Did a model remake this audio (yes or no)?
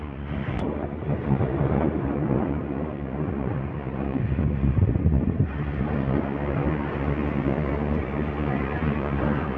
yes